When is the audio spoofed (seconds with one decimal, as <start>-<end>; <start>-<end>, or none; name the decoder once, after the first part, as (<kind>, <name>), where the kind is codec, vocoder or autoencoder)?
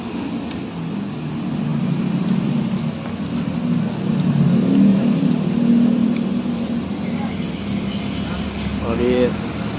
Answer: 1.7-2.8 (vocoder, BigVGAN v2); 4.9-7.3